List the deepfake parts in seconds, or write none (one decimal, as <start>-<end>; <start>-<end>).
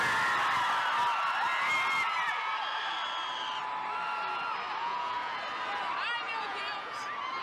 4.8-5.4; 6.2-7.0